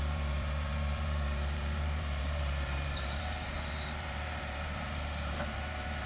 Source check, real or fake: fake